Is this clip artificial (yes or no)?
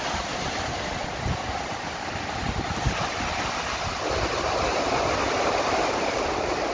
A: no